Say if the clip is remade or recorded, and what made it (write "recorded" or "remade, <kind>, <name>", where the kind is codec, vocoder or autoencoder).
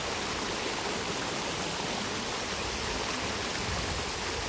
recorded